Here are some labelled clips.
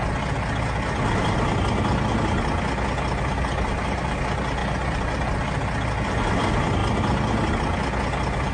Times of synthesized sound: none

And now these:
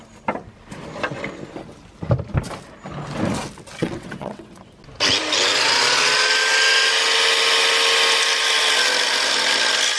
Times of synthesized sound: 3.8-4.5 (vocoder, WaveNeXt)

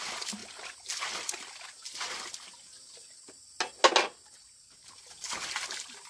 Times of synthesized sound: none

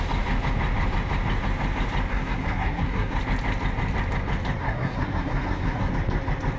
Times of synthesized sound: 2.1-3.2 (codec, SNAC); 4.6-5.9